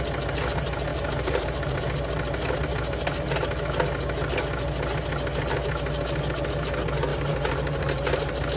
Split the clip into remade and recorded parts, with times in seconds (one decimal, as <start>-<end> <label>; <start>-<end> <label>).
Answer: 0.0-0.9 recorded; 0.9-1.8 remade; 1.8-7.1 recorded; 7.1-8.6 remade